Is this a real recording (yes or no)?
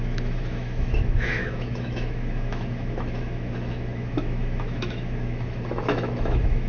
no